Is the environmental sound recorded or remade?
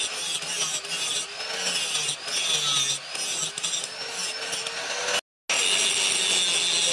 recorded